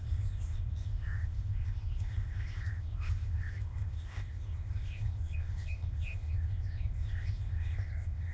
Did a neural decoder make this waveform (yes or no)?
yes